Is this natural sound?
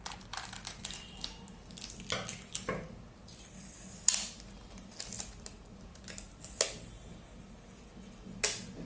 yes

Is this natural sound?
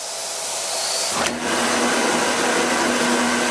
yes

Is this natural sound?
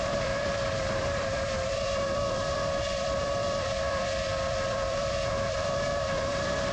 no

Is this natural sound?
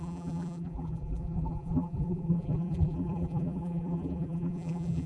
no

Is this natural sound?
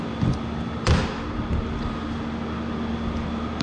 yes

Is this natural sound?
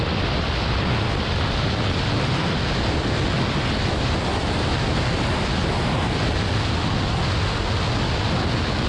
yes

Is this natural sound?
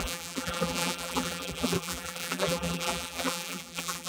no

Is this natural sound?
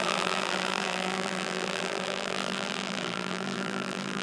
no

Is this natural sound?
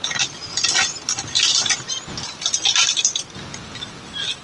yes